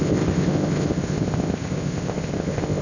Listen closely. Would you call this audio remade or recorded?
remade